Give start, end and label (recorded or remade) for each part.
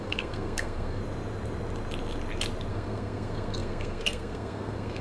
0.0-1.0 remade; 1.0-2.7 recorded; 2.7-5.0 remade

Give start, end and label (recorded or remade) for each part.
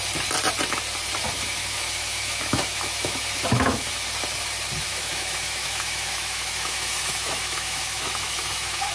0.0-1.6 recorded; 1.6-3.9 remade; 3.9-4.9 recorded; 4.9-8.9 remade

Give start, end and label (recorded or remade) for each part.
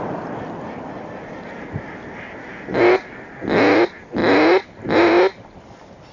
0.0-6.1 recorded